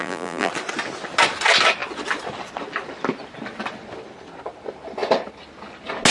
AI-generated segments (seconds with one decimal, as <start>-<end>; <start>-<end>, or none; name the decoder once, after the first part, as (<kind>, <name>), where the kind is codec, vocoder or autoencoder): 0.0-0.5 (vocoder, BigVGAN v2)